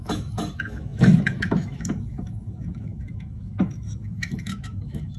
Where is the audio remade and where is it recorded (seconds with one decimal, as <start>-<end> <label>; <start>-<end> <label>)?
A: 0.0-5.2 remade